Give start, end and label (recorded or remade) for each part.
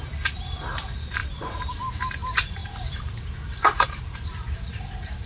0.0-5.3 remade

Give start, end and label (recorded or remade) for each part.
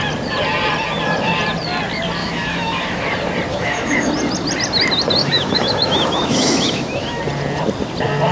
0.0-2.2 recorded; 2.2-3.0 remade; 3.0-3.5 recorded; 3.5-4.1 remade; 4.1-5.2 recorded; 5.2-7.2 remade; 7.2-8.3 recorded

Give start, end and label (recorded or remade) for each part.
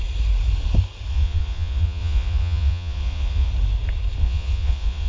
0.0-1.1 recorded; 1.1-3.5 remade; 3.5-4.2 recorded; 4.2-5.1 remade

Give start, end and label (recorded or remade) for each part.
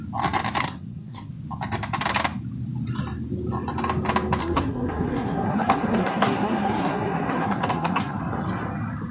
0.0-0.6 recorded; 0.6-1.3 remade; 1.3-4.4 recorded; 4.4-8.2 remade; 8.2-9.1 recorded